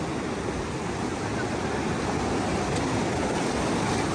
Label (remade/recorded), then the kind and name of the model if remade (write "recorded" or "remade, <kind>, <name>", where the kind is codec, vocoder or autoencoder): recorded